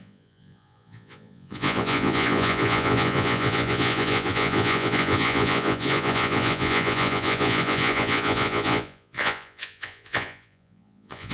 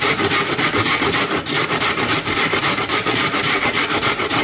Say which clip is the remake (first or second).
first